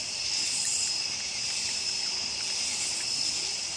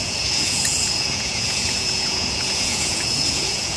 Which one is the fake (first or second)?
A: second